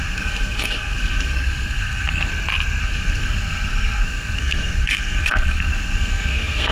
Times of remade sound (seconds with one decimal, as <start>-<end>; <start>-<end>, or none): 0.0-2.3; 2.8-6.7